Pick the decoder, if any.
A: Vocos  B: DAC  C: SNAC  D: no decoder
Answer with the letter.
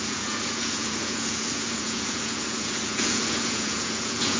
A